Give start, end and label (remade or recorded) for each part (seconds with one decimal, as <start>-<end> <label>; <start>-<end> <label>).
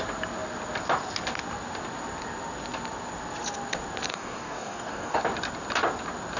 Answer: 0.0-4.1 recorded; 4.1-5.2 remade; 5.2-6.4 recorded